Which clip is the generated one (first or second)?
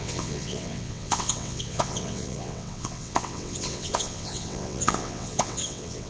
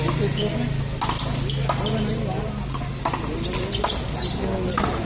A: first